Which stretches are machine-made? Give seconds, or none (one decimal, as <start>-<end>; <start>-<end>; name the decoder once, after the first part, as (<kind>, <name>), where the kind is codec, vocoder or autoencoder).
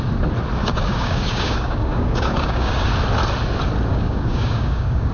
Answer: 0.6-2.9 (codec, DAC); 3.9-5.1